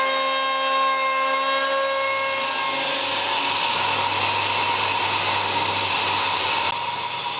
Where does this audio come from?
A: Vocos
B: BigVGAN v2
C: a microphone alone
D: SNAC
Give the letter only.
C